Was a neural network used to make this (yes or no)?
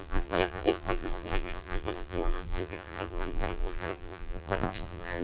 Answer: yes